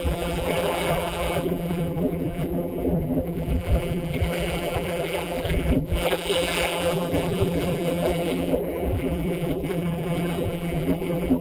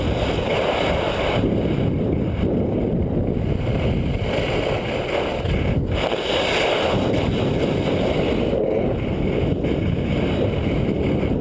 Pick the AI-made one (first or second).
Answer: first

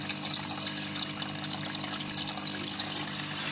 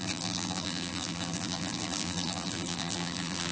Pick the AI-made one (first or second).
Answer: second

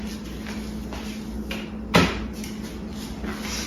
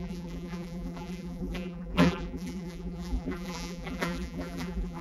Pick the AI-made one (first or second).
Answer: second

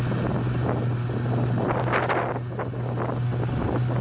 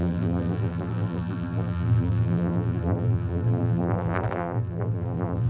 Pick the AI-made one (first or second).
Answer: second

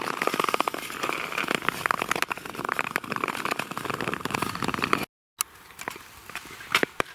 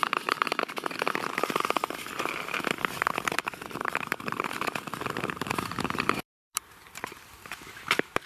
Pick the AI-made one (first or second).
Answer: second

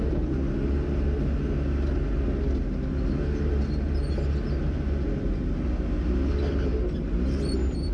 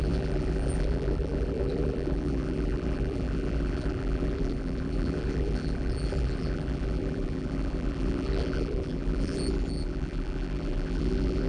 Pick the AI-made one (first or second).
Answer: second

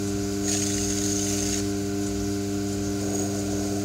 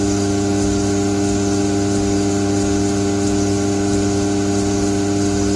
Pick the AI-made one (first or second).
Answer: second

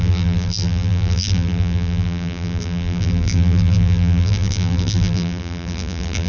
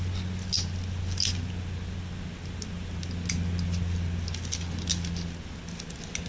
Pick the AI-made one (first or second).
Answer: first